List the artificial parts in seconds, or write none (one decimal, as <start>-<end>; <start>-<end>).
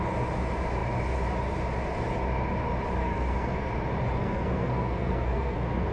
3.0-3.7; 4.2-5.9